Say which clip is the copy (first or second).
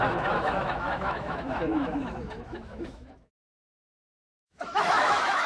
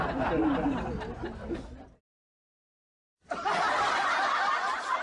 first